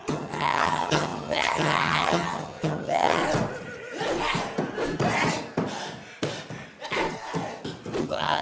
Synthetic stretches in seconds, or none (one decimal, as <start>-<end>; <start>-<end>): 0.0-3.2; 8.0-8.4